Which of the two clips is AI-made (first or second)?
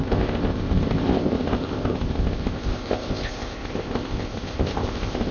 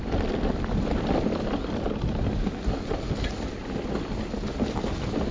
first